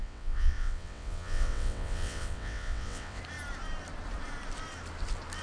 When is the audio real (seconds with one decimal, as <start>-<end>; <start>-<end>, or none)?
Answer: 3.2-5.4